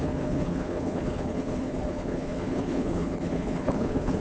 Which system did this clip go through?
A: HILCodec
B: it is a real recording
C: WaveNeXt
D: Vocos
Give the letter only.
A